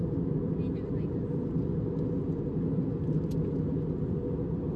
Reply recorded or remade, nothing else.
recorded